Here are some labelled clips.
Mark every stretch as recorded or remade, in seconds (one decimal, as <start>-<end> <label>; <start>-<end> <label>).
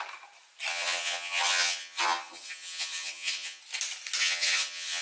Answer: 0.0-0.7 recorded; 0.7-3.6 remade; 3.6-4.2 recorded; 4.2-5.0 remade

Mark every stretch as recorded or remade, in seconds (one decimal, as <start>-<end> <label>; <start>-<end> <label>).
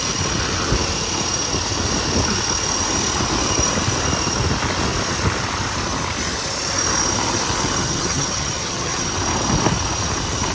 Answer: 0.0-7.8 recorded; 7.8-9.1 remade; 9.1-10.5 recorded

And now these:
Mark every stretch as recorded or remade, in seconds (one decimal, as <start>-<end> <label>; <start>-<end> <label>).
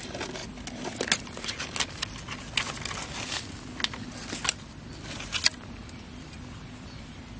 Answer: 0.0-7.4 recorded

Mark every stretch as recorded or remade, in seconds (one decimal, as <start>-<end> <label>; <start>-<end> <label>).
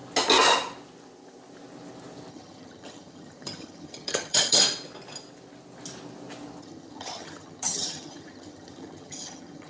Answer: 0.0-2.3 recorded; 2.3-4.6 remade; 4.6-6.6 recorded; 6.6-9.7 remade